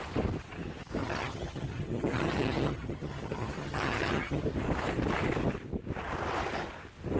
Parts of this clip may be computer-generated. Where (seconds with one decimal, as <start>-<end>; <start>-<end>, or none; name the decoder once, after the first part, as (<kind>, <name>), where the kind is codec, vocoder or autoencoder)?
1.0-4.4 (vocoder, HiFi-GAN)